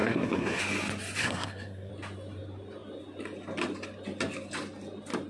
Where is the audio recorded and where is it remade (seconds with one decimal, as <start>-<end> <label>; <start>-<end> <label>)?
0.0-0.6 remade; 0.6-1.2 recorded; 1.2-1.9 remade; 1.9-5.3 recorded